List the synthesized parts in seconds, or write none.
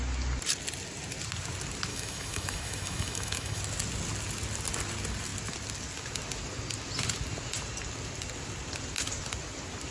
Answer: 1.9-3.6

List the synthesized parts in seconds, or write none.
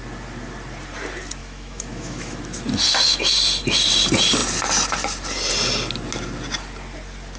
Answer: 1.4-2.4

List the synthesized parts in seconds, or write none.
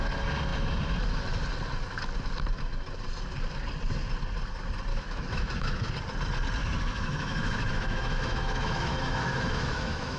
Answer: 4.9-5.9; 6.6-10.2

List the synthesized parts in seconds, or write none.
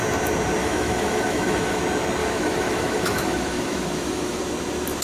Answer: 0.6-1.8; 2.2-4.4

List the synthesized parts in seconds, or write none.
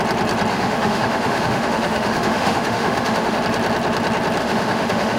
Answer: 0.5-3.4; 4.4-5.2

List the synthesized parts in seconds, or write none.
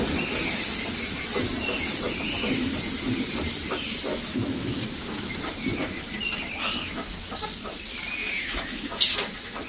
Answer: 4.1-5.4; 8.2-9.0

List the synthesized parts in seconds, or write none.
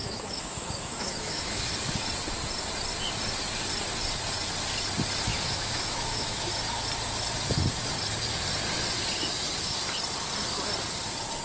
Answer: 0.0-1.7; 5.3-6.5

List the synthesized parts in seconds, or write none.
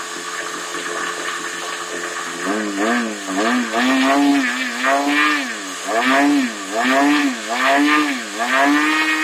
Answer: 7.2-8.5